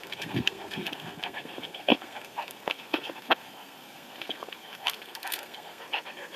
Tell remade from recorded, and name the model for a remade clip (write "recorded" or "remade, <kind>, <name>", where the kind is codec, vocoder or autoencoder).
remade, codec, SNAC